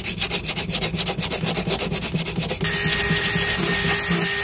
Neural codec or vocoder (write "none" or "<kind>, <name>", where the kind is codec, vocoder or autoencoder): none